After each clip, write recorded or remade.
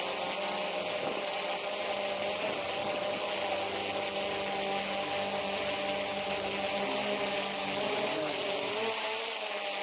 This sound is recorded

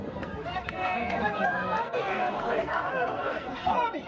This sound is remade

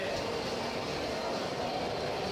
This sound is recorded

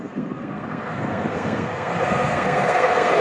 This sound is remade